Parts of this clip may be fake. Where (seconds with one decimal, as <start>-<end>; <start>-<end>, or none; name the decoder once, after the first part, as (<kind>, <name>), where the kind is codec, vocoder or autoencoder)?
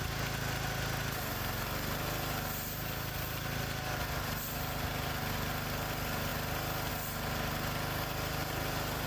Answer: none